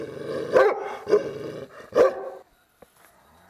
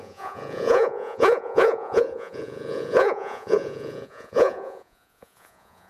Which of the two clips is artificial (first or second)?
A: second